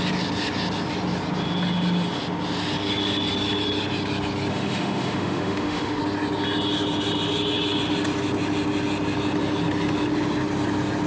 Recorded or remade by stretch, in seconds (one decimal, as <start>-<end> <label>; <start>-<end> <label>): 0.0-4.5 recorded; 4.5-6.0 remade; 6.0-11.1 recorded